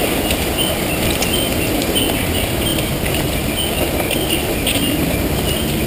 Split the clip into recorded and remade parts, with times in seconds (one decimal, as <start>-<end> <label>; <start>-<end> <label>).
0.0-5.9 recorded